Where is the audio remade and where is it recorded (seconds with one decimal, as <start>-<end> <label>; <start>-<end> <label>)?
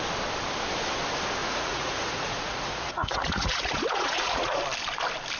0.0-1.4 recorded; 1.4-4.6 remade; 4.6-5.4 recorded